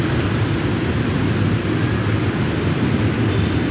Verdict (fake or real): real